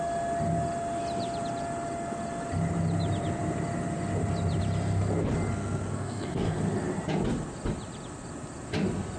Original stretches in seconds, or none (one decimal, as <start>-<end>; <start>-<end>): 0.0-5.5; 6.6-9.2